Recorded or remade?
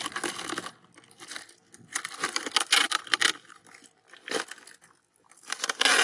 recorded